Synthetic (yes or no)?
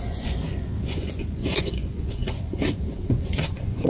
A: yes